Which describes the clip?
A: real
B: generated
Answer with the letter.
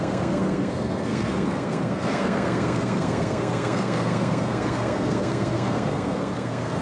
B